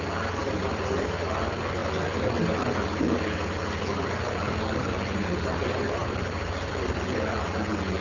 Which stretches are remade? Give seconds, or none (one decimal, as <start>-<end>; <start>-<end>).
0.4-1.1; 6.0-6.7